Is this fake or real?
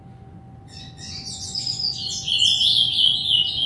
fake